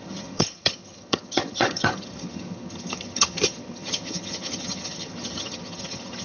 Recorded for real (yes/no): no